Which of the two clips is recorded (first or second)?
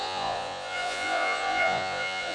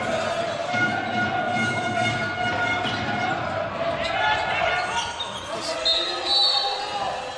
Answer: second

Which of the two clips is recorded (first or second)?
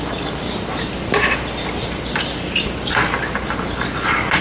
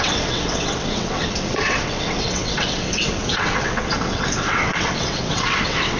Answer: first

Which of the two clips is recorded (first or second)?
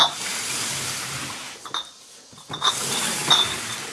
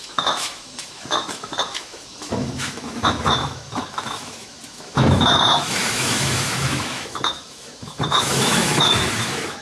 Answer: first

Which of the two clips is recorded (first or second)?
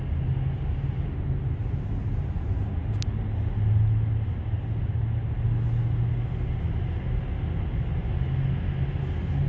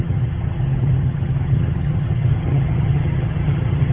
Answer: first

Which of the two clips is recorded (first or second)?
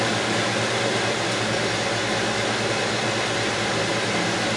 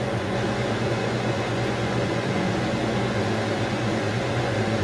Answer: first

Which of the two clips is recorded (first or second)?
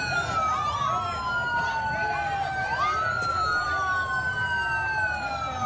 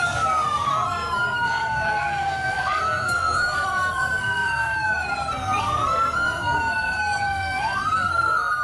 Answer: first